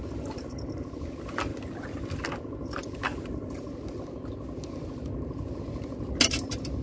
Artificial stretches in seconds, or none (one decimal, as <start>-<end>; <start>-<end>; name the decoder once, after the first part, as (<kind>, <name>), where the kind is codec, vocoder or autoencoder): none